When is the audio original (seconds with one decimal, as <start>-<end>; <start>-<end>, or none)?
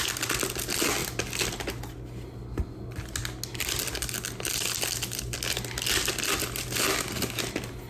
0.0-7.9